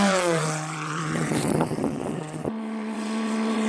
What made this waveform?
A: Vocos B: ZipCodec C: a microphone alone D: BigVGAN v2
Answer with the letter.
A